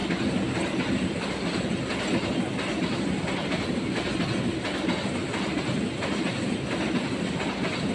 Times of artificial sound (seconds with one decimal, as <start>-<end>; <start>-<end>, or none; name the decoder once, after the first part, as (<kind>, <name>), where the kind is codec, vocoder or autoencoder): none